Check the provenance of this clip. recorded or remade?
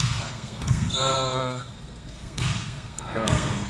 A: remade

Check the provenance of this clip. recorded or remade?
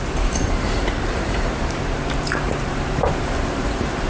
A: remade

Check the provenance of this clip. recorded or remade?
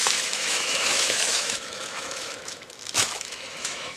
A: remade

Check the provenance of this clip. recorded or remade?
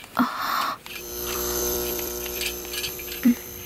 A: remade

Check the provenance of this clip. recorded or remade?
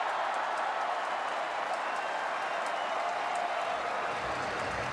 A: recorded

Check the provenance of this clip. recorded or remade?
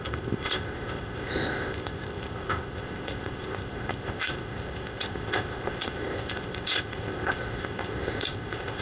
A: remade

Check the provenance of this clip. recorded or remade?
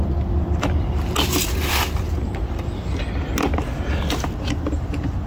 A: recorded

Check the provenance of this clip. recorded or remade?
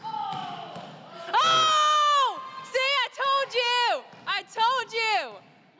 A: recorded